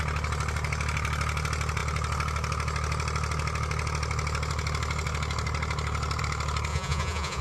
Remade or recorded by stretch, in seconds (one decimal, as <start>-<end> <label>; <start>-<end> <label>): 0.0-6.7 recorded; 6.7-7.4 remade